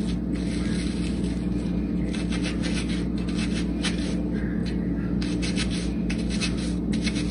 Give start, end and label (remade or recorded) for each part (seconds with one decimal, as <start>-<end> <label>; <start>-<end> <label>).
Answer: 0.0-7.3 recorded